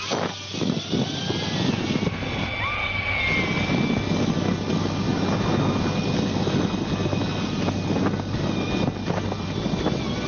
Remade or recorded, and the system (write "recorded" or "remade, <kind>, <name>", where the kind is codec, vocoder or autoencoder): recorded